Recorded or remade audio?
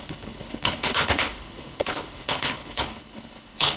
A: remade